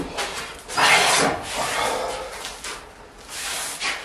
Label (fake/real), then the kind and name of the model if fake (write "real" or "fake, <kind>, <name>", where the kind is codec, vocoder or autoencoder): real